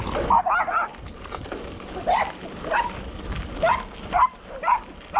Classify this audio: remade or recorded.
recorded